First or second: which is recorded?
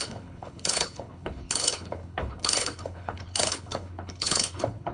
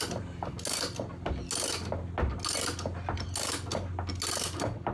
second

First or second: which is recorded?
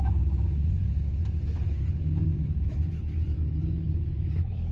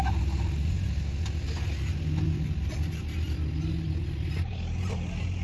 second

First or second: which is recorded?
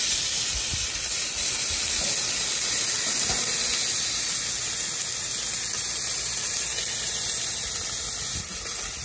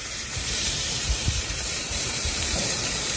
first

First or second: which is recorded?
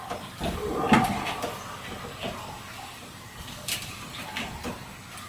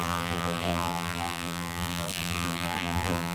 first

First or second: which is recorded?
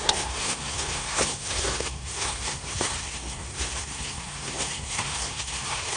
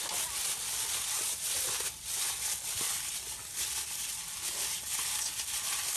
second